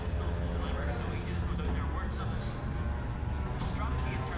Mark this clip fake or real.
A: real